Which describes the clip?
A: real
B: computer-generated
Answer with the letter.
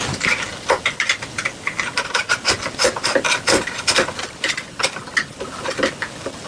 A